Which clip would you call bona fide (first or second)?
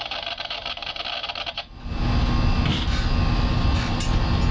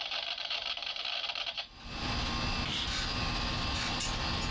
first